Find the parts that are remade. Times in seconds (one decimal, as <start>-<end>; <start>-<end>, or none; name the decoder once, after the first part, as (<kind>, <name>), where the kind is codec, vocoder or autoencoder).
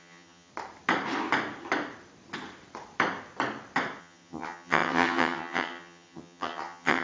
0.0-0.5 (vocoder, HiFi-GAN); 4.0-7.0